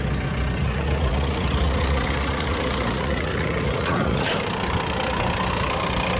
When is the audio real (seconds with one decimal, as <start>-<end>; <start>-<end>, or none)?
0.0-0.6; 4.3-6.2